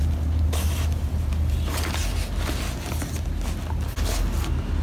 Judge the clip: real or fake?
real